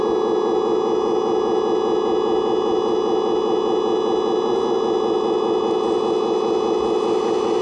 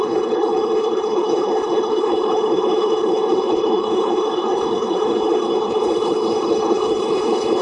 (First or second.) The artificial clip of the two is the second